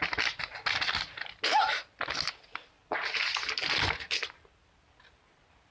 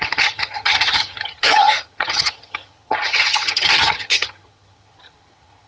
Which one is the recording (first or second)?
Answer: first